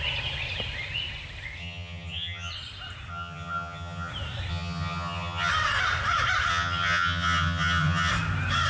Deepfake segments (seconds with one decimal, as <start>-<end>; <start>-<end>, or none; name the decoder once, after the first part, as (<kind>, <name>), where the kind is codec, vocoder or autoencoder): 1.6-2.5 (vocoder, HiFi-GAN); 3.1-4.1; 4.5-5.5; 6.5-8.1